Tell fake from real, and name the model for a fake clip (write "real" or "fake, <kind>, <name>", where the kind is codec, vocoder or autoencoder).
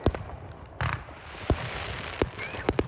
fake, vocoder, BigVGAN v2